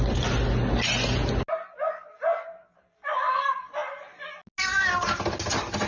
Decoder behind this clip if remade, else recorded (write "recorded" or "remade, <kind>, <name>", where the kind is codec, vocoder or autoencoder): recorded